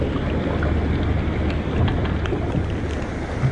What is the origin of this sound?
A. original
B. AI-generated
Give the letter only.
A